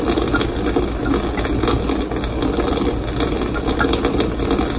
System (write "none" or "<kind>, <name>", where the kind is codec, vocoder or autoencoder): none